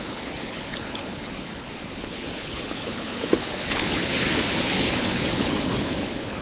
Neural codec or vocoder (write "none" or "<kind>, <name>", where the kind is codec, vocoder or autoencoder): codec, HILCodec